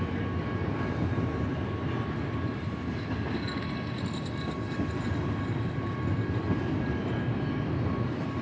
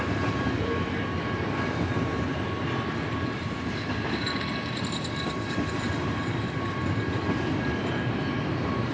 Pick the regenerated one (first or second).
second